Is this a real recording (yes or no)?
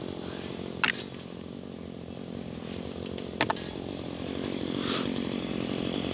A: yes